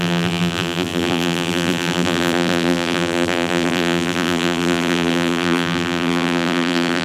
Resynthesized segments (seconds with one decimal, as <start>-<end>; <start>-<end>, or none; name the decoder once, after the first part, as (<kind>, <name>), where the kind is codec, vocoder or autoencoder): 0.0-7.0 (vocoder, BigVGAN v2)